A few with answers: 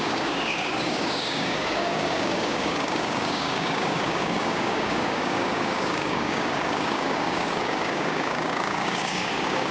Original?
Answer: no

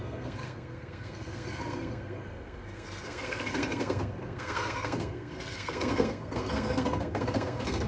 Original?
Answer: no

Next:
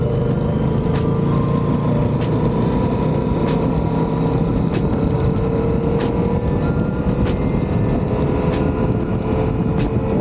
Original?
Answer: yes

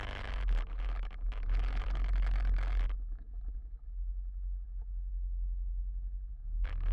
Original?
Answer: no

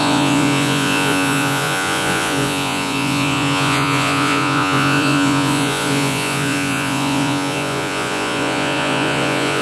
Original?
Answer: no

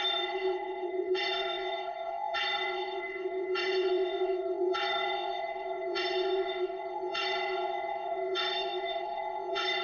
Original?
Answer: no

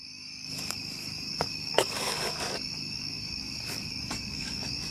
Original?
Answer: no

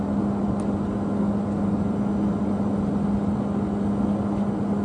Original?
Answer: yes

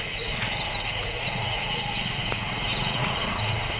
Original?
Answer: no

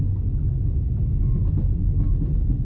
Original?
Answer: yes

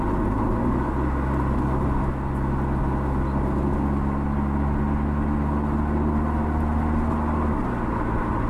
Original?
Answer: yes